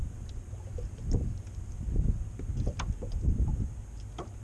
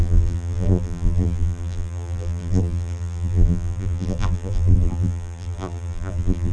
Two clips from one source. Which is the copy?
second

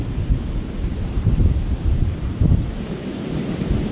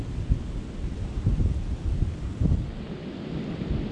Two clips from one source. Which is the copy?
first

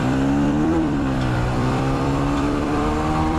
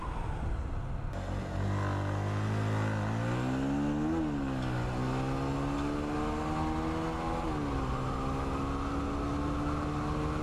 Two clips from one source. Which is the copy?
first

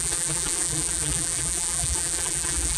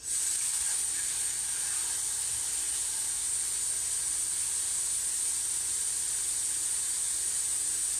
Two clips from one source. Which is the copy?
first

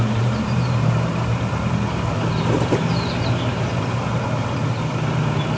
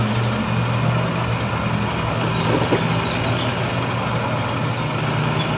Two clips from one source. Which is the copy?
first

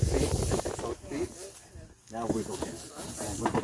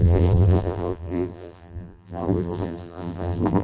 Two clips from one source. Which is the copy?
second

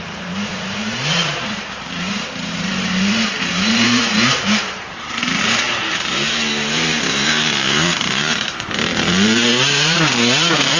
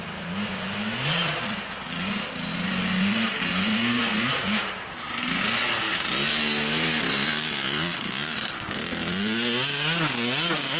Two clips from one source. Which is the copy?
first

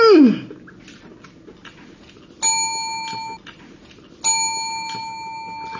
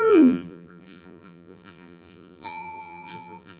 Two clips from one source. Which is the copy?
second